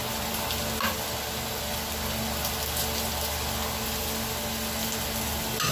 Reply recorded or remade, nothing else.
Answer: recorded